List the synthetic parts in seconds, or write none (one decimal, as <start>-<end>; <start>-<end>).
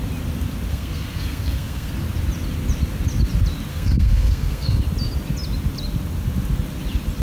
0.7-1.9; 3.7-4.8